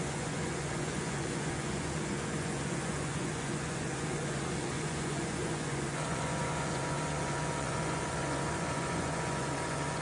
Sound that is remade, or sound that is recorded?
remade